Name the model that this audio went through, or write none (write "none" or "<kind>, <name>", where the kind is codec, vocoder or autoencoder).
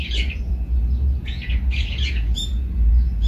vocoder, Vocos